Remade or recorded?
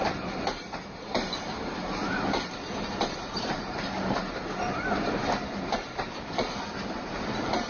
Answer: remade